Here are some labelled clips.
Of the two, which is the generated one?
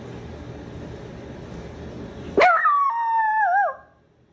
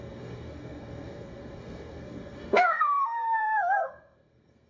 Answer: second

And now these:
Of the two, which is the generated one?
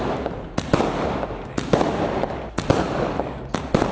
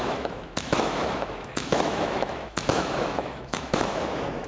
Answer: second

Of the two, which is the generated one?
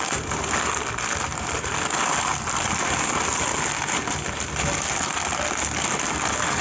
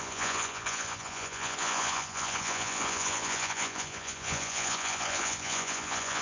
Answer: second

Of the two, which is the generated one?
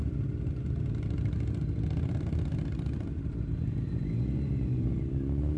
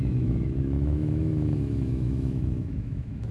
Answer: second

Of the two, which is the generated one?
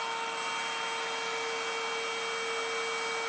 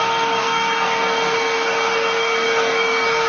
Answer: second